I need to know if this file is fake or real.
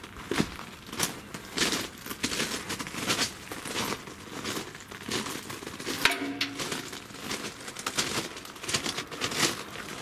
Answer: real